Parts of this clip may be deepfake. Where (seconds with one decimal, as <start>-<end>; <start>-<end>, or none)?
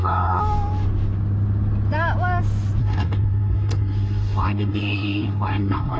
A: 0.0-0.4; 2.8-6.0